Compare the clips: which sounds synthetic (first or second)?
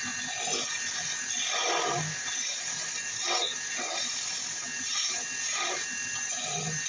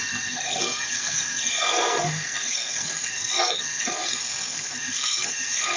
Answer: second